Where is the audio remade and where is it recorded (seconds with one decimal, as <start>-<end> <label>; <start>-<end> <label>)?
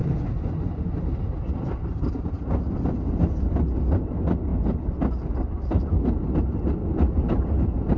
0.0-0.7 remade; 0.7-8.0 recorded